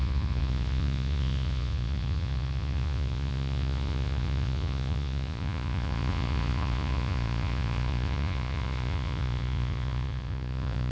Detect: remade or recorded remade